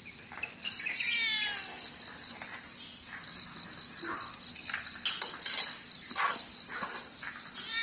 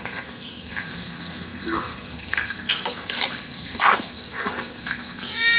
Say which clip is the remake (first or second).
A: second